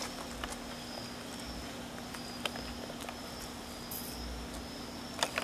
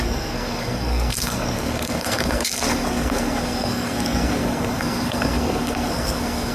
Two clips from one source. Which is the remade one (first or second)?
second